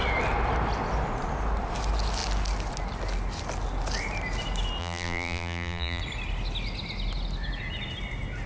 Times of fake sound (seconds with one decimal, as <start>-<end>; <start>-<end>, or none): 4.8-6.0